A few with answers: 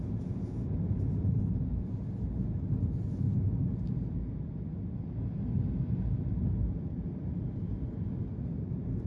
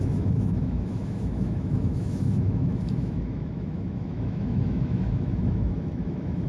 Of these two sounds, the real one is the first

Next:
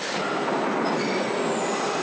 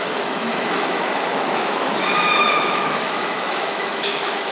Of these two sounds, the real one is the first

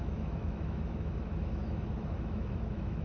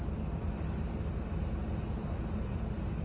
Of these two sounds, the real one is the second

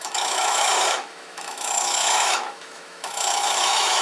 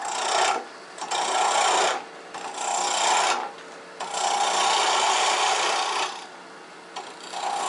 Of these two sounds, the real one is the second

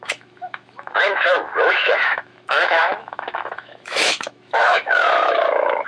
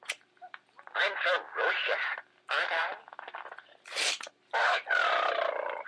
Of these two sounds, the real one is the second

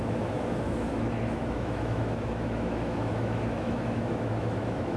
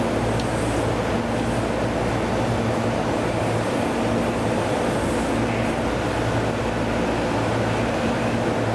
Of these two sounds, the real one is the second